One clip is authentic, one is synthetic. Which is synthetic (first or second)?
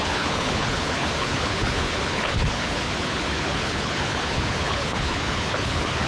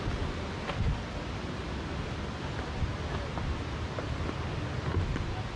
first